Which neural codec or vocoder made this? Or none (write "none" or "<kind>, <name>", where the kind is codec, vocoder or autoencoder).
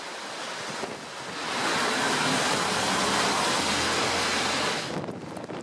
none